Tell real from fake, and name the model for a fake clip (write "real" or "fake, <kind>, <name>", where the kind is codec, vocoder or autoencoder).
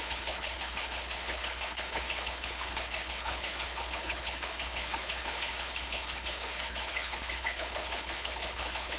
fake, codec, HILCodec